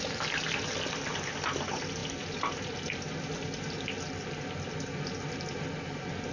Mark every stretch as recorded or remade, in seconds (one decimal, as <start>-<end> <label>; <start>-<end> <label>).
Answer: 0.0-6.3 recorded